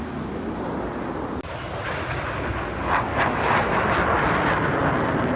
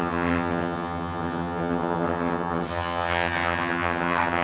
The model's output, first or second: second